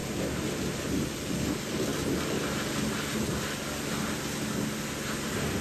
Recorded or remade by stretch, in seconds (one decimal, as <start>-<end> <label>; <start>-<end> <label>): 0.0-1.3 recorded; 1.3-1.9 remade; 1.9-5.6 recorded